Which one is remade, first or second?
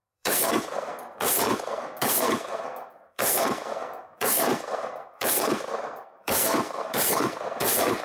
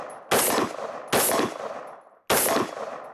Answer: first